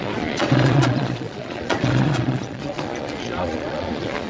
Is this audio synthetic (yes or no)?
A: yes